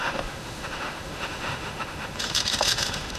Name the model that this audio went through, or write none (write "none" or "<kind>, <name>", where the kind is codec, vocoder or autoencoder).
autoencoder, DAC-VAE